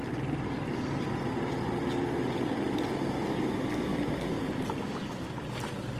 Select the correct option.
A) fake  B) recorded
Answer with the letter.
B